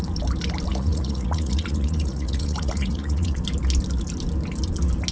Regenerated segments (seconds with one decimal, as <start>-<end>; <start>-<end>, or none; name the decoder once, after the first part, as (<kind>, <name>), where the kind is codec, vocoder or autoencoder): 0.7-3.4 (vocoder, Vocos)